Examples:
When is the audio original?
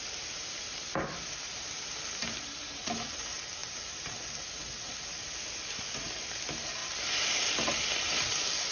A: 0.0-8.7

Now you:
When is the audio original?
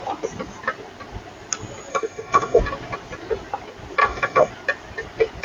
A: 0.0-1.9; 2.6-4.0; 4.5-5.4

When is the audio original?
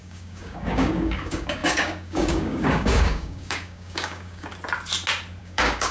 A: 4.5-5.4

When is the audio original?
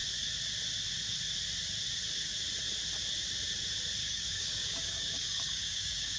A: 0.0-4.0